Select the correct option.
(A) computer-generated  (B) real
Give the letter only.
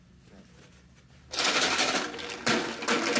B